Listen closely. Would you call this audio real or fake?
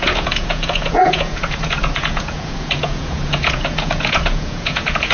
fake